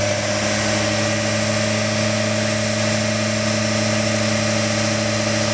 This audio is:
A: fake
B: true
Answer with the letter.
B